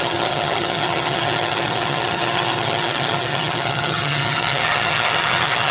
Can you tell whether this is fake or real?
fake